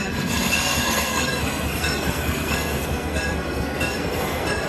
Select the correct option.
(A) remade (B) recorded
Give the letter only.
A